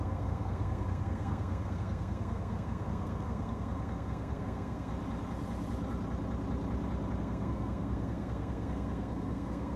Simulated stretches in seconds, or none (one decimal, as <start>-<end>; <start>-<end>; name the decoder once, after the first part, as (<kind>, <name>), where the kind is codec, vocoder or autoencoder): 0.0-4.9 (codec, SNAC); 7.2-9.8